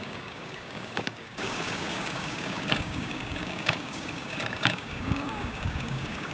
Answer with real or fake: fake